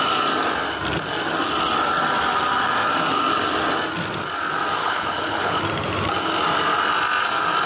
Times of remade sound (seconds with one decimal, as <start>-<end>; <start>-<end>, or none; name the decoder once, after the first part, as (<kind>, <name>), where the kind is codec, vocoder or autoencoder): 4.8-5.6 (codec, HILCodec)